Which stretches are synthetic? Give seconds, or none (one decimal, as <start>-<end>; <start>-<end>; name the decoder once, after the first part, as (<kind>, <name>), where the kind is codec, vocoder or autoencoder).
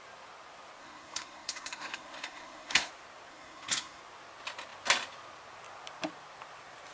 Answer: 0.8-2.9 (codec, SNAC); 3.3-4.0